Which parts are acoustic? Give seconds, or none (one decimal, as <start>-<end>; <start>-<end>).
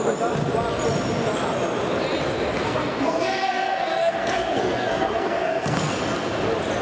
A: 0.0-2.6; 6.0-6.8